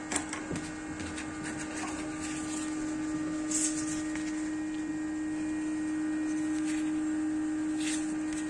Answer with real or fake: real